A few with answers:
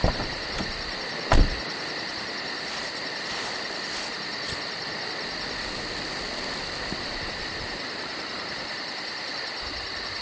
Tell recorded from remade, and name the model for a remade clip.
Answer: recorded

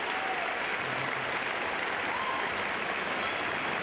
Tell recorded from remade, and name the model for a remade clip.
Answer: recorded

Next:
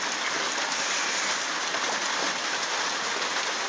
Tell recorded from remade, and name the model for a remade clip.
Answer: recorded